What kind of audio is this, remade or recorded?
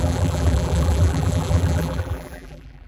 remade